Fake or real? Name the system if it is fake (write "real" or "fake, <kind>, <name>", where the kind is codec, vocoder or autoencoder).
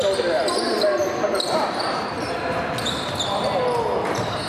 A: real